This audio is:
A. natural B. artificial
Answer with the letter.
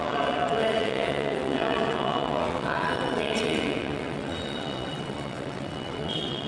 B